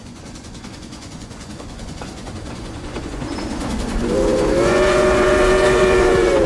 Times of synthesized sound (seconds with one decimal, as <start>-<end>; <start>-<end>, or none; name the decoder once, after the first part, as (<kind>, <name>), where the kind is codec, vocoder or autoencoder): 0.0-6.5 (vocoder, Vocos)